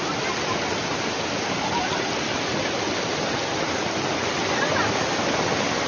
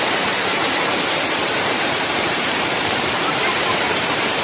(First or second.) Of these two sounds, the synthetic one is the second